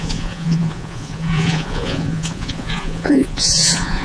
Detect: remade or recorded remade